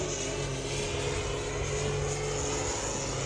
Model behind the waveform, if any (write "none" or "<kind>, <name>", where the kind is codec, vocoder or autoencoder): none